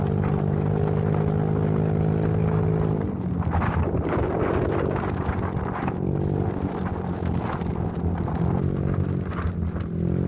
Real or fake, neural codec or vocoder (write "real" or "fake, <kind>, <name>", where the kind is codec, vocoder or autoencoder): real